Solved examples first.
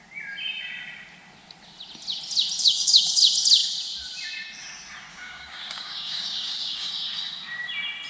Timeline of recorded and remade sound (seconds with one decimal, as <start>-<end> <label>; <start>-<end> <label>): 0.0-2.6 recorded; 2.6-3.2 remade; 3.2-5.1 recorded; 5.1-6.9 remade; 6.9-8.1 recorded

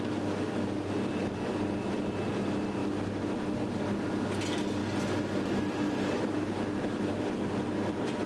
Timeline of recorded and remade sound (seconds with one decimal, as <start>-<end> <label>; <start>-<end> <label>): 0.0-8.3 recorded

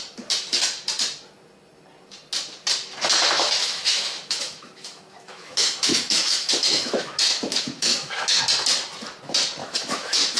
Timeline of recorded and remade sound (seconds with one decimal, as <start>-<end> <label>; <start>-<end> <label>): 0.0-3.6 recorded; 3.6-8.4 remade; 8.4-9.6 recorded; 9.6-10.4 remade